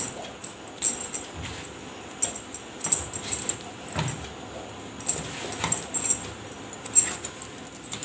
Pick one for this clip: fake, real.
real